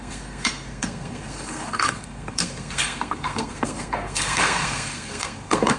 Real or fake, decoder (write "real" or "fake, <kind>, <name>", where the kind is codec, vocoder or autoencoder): fake, codec, SNAC